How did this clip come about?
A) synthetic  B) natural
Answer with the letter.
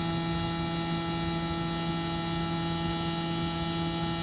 B